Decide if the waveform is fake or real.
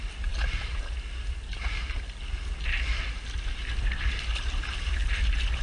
real